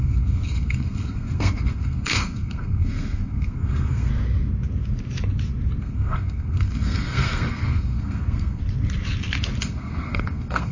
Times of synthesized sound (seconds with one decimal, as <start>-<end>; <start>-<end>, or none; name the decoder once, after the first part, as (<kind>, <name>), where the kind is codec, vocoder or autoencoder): 0.0-4.1 (codec, SNAC); 5.8-8.6; 9.6-10.7